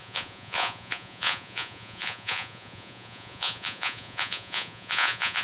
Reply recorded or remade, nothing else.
remade